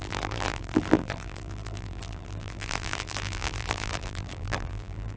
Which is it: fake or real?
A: fake